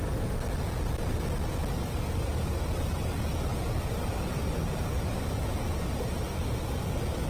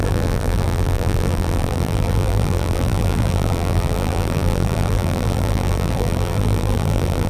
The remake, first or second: second